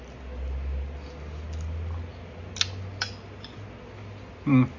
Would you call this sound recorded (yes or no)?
yes